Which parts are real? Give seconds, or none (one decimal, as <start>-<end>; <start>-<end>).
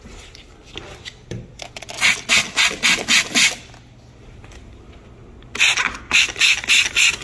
0.0-7.2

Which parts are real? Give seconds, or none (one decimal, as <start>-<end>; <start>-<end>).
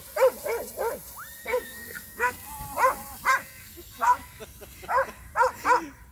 0.0-1.4; 2.6-3.4; 4.4-6.1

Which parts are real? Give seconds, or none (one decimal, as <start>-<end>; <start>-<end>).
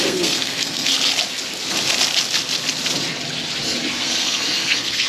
0.9-4.0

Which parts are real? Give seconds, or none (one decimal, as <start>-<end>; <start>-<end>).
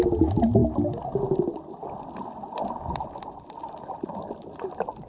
0.0-5.1